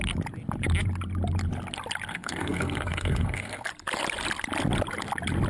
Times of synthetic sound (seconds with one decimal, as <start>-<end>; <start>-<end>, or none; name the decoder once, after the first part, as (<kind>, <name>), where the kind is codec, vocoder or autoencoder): 2.1-3.7 (codec, SNAC)